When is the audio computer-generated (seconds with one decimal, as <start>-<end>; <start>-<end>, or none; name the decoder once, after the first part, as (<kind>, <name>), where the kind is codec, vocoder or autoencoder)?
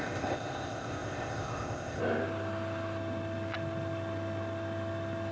0.0-2.0 (codec, ZipCodec)